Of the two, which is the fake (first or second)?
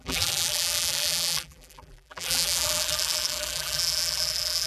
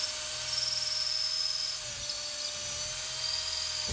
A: first